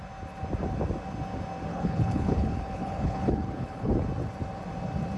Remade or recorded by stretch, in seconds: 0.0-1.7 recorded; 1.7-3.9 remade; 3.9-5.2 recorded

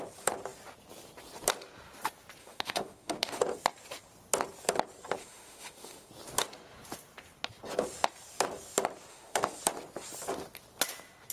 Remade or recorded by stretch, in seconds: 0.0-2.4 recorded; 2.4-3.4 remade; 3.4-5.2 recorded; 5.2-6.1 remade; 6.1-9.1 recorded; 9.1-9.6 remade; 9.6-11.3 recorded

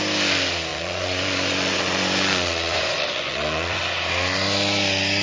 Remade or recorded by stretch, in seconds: 0.0-0.7 recorded; 0.7-3.8 remade; 3.8-5.2 recorded

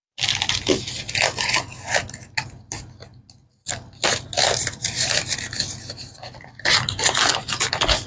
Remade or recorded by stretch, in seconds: 0.0-8.1 recorded